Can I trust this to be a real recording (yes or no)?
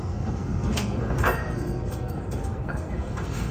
no